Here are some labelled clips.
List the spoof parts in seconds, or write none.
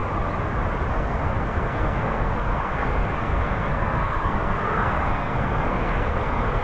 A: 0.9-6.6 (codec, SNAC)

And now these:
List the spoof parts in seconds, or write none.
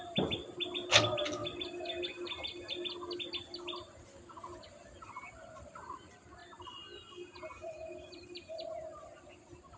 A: none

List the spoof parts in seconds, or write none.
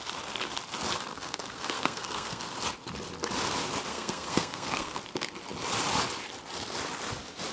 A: 1.1-2.4 (codec, SNAC); 3.9-5.0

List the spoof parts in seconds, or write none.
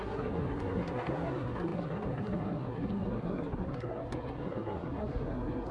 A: 0.0-5.7 (codec, SNAC)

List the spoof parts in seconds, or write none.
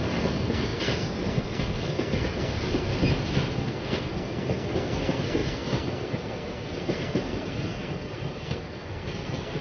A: 0.0-2.9 (codec, SNAC); 3.5-9.6